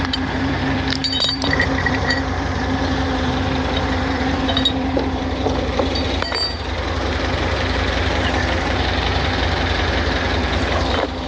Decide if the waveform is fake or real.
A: fake